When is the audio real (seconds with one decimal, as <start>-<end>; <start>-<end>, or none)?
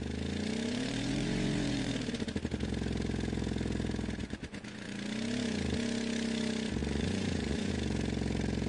0.0-0.7; 1.9-4.2; 4.9-6.8; 7.7-8.7